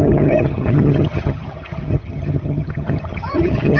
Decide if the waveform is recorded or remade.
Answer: remade